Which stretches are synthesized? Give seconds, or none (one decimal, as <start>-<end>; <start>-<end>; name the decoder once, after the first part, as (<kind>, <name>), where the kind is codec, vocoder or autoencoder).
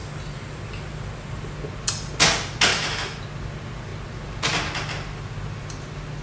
2.7-3.2 (autoencoder, DAC-VAE)